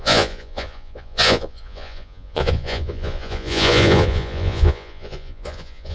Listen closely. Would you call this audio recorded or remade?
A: remade